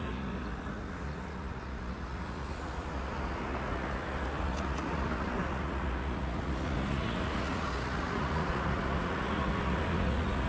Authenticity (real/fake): fake